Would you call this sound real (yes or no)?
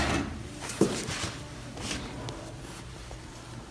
no